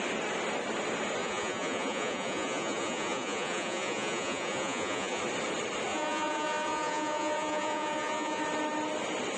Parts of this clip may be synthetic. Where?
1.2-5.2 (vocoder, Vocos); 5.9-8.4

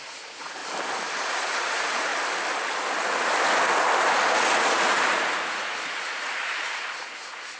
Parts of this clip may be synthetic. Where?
0.0-0.6 (vocoder, Vocos); 1.2-2.1; 4.3-7.6

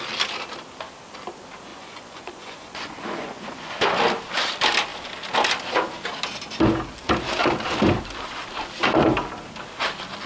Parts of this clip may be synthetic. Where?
1.7-3.7 (vocoder, Vocos)

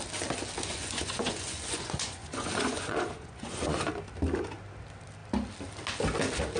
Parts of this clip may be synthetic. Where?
0.7-3.9 (vocoder, Vocos)